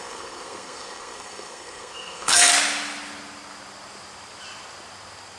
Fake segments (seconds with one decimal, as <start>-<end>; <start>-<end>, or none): 0.0-2.5